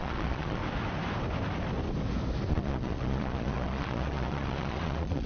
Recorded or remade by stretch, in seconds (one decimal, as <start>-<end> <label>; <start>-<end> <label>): 0.0-0.6 remade; 0.6-2.5 recorded; 2.5-5.3 remade